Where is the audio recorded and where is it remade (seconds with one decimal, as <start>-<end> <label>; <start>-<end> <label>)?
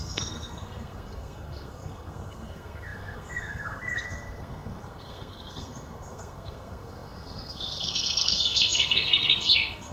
0.0-9.9 remade